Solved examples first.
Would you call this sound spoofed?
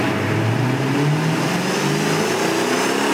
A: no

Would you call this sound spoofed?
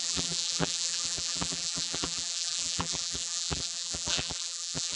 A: yes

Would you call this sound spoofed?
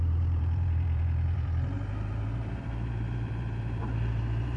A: yes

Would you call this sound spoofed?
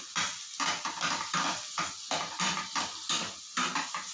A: no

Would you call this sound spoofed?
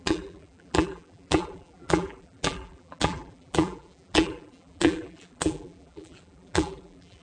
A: yes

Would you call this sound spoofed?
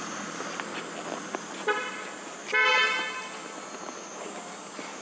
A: no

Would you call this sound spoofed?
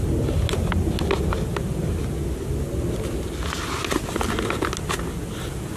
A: no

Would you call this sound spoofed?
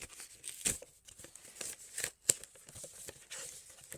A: no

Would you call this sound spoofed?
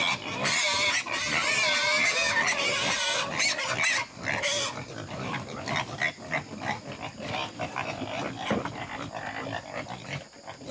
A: no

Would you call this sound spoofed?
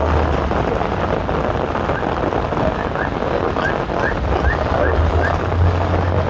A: no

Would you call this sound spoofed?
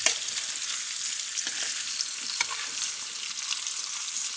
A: no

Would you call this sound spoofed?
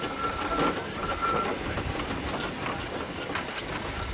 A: no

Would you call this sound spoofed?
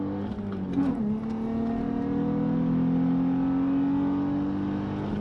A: no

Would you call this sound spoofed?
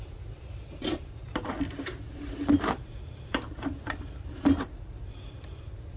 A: yes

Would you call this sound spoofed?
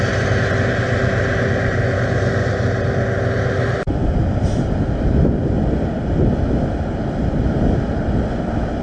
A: no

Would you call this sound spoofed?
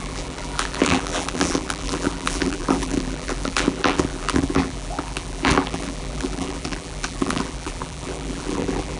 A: yes